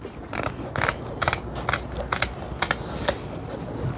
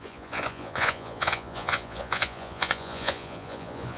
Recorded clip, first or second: first